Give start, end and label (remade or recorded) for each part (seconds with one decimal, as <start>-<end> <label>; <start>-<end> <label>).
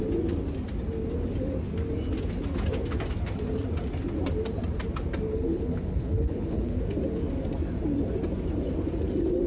0.0-5.3 recorded; 5.3-6.8 remade; 6.8-9.5 recorded